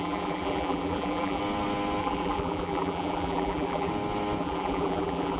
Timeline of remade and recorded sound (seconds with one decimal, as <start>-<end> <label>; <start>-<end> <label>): 0.0-1.4 remade; 1.4-2.0 recorded; 2.0-3.9 remade; 3.9-4.4 recorded; 4.4-5.4 remade